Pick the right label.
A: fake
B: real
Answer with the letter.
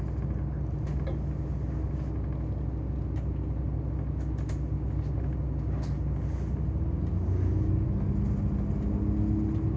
B